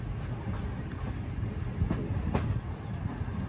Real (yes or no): yes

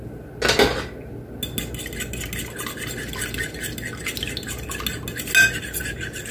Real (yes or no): yes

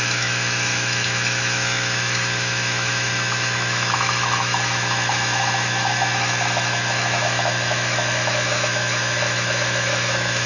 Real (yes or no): no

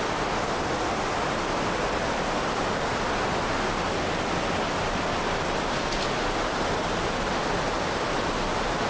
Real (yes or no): yes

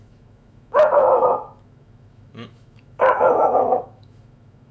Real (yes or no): no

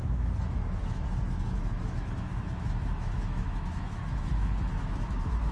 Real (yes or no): no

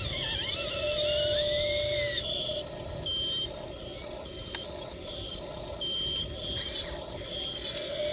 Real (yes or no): yes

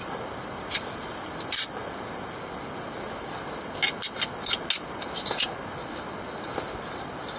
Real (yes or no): yes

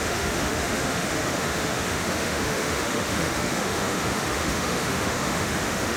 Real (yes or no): no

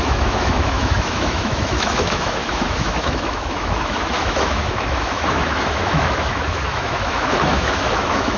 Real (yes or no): no